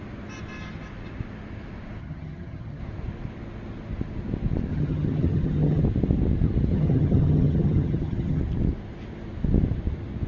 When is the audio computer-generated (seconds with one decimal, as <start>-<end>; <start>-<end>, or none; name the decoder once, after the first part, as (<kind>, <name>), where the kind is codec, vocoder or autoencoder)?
2.0-2.8 (vocoder, HiFi-GAN); 4.7-5.8; 6.7-8.4